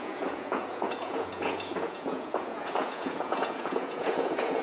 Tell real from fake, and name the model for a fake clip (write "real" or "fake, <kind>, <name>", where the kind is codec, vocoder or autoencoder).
fake, vocoder, Vocos